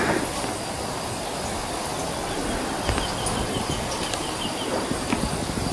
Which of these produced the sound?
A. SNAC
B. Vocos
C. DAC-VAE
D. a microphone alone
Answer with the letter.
D